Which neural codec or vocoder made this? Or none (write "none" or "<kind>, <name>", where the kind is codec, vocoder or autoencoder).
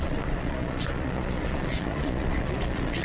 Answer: vocoder, Vocos